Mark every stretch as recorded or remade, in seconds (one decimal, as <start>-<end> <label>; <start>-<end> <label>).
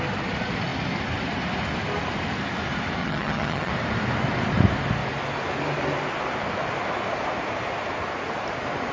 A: 0.0-3.0 recorded; 3.0-3.7 remade; 3.7-8.9 recorded